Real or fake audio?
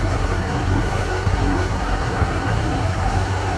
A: fake